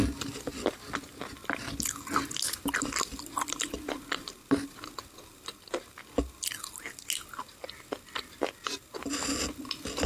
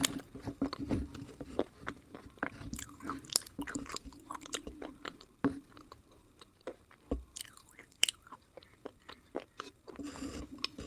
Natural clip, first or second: first